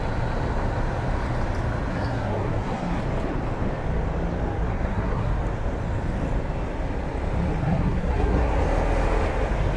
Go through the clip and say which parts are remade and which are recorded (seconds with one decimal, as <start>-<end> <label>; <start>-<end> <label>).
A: 0.0-1.9 recorded; 1.9-3.0 remade; 3.0-4.7 recorded; 4.7-5.3 remade; 5.3-7.6 recorded; 7.6-8.5 remade; 8.5-9.8 recorded